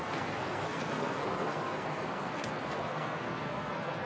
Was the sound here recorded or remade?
remade